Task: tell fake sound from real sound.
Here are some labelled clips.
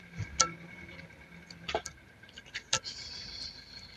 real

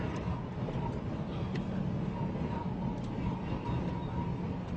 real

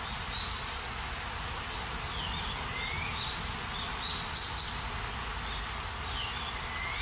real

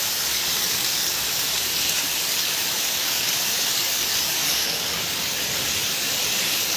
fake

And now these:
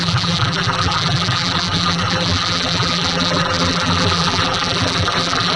fake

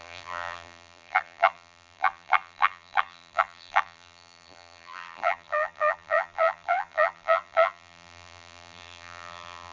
fake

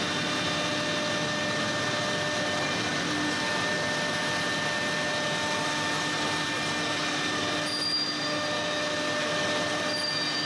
real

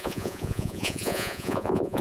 fake